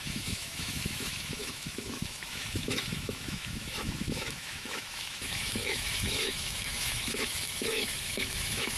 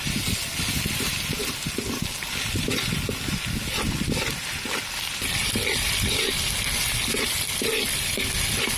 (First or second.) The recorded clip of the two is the second